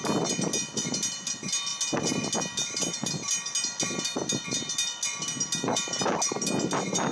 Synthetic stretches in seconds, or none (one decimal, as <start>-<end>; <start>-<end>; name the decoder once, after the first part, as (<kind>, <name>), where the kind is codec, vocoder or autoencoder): none